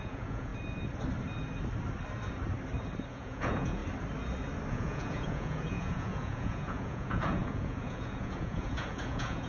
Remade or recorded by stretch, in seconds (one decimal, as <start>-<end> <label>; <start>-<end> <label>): 0.0-0.5 remade; 0.5-3.1 recorded; 3.1-3.8 remade; 3.8-4.7 recorded; 4.7-9.5 remade